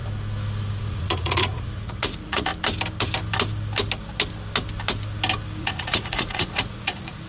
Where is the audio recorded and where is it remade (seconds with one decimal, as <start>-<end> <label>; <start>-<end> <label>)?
0.0-0.8 recorded; 0.8-2.5 remade; 2.5-5.6 recorded; 5.6-7.3 remade